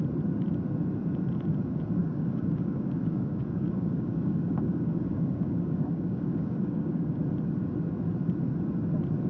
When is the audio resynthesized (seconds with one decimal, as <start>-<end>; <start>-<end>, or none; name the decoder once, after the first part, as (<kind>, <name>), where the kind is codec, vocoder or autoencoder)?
2.0-7.2 (codec, DAC)